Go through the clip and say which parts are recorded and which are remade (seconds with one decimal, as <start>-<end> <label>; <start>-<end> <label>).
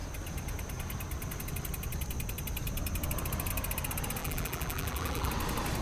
0.0-4.2 recorded; 4.2-5.3 remade; 5.3-5.8 recorded